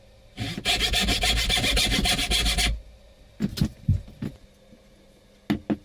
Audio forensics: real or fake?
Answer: real